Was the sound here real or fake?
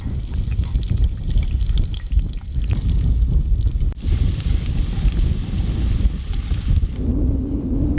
real